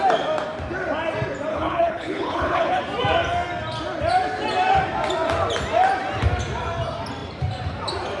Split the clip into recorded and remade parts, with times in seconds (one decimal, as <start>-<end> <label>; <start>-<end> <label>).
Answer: 0.0-1.5 recorded; 1.5-2.8 remade; 2.8-8.2 recorded